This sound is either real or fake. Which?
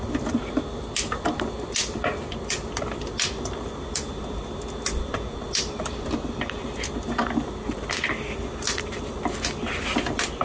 real